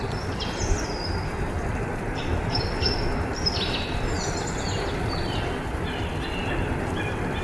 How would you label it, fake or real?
fake